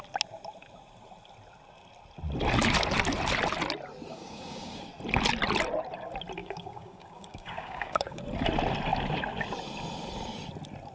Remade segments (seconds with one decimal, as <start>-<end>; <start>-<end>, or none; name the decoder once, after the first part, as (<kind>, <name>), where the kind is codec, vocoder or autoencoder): 4.1-4.8 (codec, DAC); 6.4-8.2

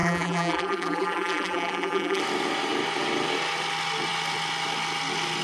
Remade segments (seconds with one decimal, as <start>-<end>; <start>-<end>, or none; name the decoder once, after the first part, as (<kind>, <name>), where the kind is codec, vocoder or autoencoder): 0.0-2.2 (vocoder, BigVGAN v2)

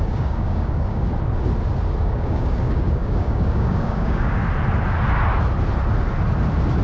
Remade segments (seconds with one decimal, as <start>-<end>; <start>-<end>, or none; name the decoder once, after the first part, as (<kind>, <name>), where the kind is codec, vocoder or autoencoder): 0.0-1.1 (codec, DAC); 2.0-4.4

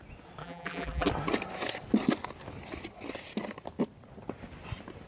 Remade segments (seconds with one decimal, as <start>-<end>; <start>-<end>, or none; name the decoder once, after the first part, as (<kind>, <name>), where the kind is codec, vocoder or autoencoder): 0.4-1.1 (vocoder, BigVGAN v2)

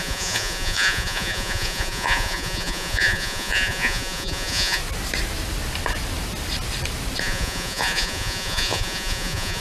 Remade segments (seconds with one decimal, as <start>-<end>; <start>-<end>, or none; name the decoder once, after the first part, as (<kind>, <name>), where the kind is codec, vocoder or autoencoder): 0.0-4.8 (vocoder, Vocos); 7.2-9.6

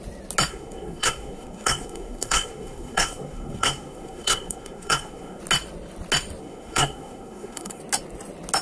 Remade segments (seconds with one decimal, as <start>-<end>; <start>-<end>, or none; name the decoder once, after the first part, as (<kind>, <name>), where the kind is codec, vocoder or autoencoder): 0.5-5.4 (codec, SNAC); 6.4-7.8